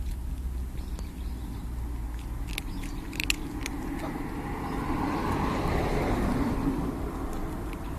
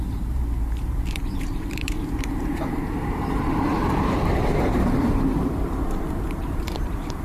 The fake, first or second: second